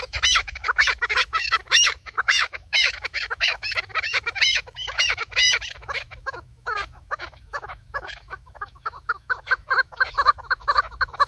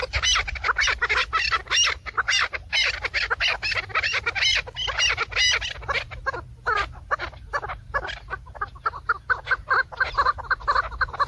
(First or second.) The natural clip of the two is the second